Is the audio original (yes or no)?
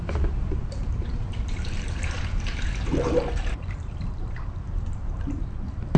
no